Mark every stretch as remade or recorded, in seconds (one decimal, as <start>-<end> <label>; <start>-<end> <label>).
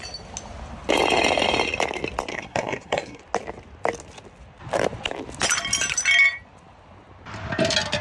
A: 0.0-2.3 recorded; 2.3-3.2 remade; 3.2-8.0 recorded